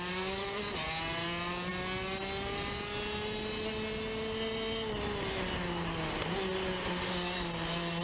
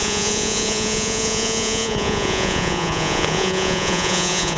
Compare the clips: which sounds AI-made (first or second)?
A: second